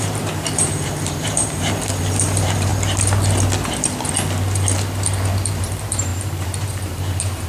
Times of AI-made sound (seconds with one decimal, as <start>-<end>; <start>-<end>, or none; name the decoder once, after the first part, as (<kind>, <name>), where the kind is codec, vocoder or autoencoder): 0.0-2.7 (vocoder, BigVGAN v2); 5.6-7.5